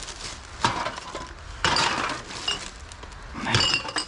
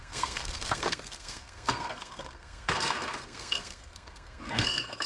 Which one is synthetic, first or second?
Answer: second